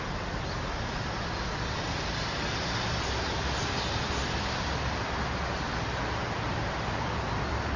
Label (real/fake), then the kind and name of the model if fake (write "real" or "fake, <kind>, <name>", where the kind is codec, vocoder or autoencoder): real